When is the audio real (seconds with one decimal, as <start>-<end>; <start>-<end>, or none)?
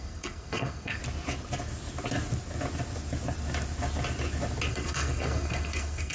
1.0-4.7